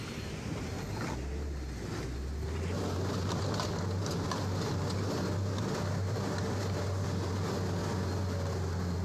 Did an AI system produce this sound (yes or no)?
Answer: no